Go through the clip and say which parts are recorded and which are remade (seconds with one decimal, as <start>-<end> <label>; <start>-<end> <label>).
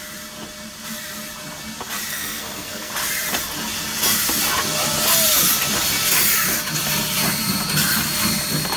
0.0-2.1 recorded; 2.1-2.9 remade; 2.9-8.8 recorded